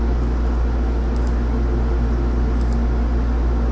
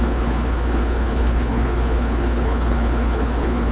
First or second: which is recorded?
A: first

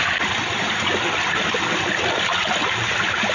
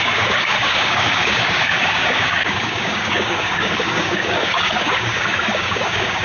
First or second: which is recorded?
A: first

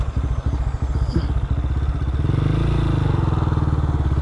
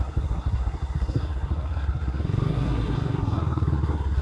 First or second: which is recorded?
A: first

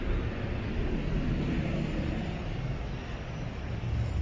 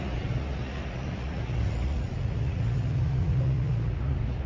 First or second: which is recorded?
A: first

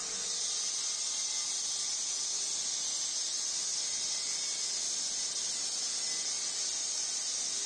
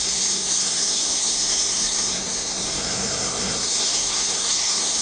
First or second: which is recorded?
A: first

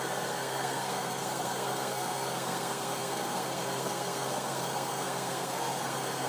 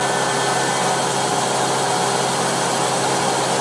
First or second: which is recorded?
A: second